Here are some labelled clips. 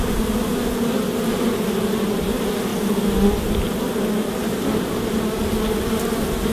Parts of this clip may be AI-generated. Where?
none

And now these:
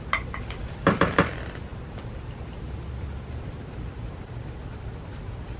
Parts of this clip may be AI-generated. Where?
none